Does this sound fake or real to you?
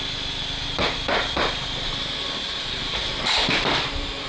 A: fake